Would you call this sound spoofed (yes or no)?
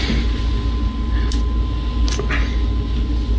no